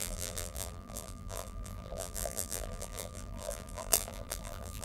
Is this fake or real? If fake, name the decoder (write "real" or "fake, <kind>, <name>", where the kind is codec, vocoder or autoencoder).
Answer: fake, vocoder, BigVGAN v2